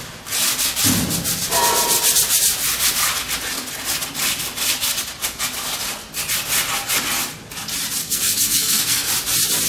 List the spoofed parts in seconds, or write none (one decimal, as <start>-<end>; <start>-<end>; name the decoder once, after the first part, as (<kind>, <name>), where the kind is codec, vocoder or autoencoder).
8.0-9.1 (codec, SNAC)